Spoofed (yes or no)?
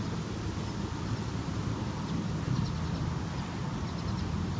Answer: no